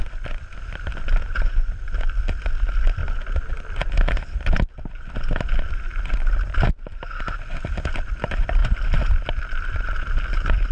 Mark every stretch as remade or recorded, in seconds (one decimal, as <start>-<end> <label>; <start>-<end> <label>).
0.0-3.0 remade; 3.0-7.2 recorded; 7.2-8.6 remade; 8.6-9.4 recorded; 9.4-10.7 remade